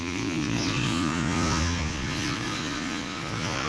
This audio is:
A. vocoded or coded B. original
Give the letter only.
A